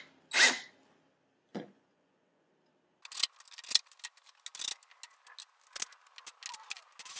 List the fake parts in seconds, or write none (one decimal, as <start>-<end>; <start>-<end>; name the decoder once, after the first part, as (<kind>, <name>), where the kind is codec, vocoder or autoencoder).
1.5-2.5 (vocoder, Vocos)